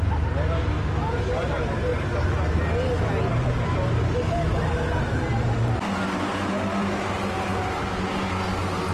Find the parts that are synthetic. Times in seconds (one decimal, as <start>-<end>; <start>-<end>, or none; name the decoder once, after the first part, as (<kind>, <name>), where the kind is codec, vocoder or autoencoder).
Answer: none